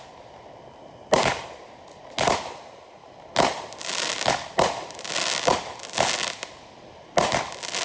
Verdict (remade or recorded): recorded